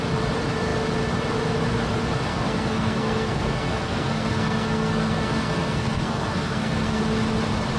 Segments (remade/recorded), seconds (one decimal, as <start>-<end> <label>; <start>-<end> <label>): 0.0-2.3 recorded; 2.3-7.0 remade; 7.0-7.8 recorded